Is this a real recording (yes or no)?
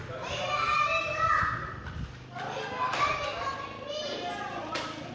yes